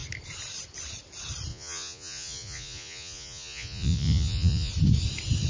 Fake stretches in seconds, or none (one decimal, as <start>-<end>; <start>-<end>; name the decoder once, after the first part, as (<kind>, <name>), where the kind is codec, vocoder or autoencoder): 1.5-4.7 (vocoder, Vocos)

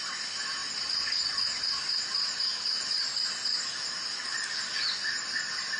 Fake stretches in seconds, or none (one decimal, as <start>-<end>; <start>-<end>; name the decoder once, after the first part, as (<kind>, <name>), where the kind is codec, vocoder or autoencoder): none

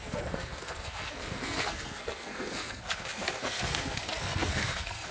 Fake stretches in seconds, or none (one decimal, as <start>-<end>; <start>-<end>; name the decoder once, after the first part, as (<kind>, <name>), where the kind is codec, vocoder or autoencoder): 0.0-5.1 (codec, SNAC)

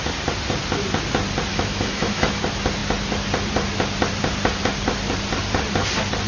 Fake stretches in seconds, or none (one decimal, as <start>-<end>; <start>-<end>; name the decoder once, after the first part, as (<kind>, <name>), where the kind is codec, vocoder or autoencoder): 1.5-2.4 (autoencoder, DAC-VAE)

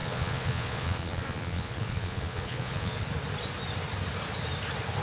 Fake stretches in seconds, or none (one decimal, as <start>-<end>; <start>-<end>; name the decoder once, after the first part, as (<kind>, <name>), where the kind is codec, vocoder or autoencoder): 0.0-3.0 (vocoder, Vocos)

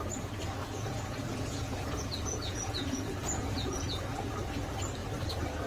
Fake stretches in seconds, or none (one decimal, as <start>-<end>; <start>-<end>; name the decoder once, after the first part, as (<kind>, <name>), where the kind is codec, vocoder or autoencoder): 0.6-4.0 (vocoder, Vocos)

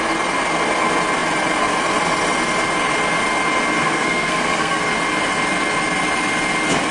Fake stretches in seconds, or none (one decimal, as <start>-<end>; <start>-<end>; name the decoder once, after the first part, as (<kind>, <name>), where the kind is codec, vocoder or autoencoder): 3.8-4.8 (codec, SNAC)